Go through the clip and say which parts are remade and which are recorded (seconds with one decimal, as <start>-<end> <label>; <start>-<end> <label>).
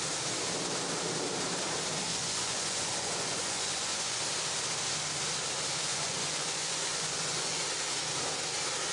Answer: 0.0-2.1 recorded; 2.1-4.2 remade; 4.2-5.9 recorded; 5.9-7.6 remade; 7.6-8.9 recorded